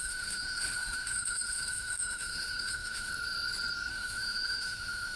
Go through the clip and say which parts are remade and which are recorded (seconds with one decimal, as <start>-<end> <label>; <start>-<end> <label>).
0.0-3.1 remade; 3.1-3.9 recorded; 3.9-5.2 remade